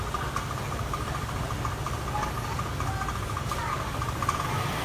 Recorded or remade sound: recorded